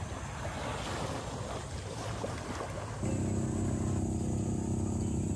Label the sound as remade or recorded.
recorded